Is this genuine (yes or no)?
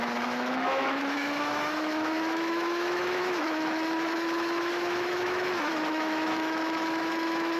no